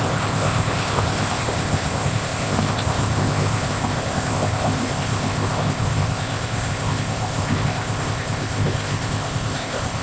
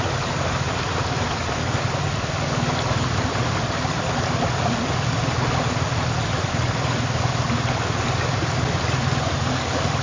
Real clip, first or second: second